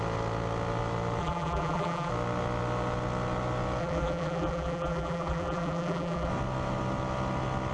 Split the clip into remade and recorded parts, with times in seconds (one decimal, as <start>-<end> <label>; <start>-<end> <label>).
0.0-1.2 recorded; 1.2-2.1 remade; 2.1-3.8 recorded; 3.8-6.3 remade; 6.3-7.7 recorded